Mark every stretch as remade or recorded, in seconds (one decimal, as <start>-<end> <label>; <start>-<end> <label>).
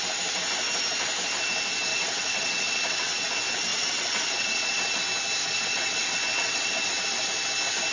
0.0-1.9 recorded; 1.9-3.3 remade; 3.3-3.7 recorded; 3.7-5.0 remade; 5.0-5.4 recorded; 5.4-6.9 remade; 6.9-7.9 recorded